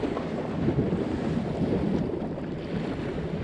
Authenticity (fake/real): real